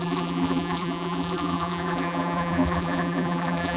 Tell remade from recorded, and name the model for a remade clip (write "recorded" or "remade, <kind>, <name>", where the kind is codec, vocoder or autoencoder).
remade, vocoder, BigVGAN v2